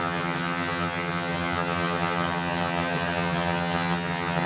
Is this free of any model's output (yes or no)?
no